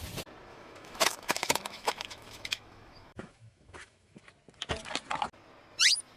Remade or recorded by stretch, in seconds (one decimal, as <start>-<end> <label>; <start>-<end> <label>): 0.0-0.5 recorded; 0.5-4.2 remade; 4.2-6.2 recorded